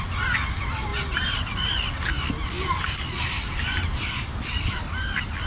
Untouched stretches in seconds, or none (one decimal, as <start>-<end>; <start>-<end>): 0.0-5.5